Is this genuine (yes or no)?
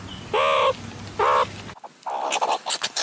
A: yes